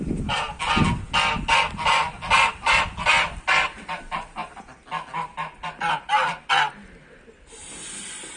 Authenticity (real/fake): real